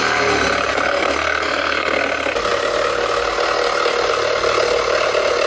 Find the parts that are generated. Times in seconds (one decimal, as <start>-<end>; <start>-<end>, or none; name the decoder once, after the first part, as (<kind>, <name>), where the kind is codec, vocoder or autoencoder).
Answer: 0.7-2.0 (codec, SNAC)